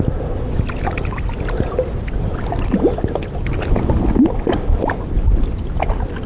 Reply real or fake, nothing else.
real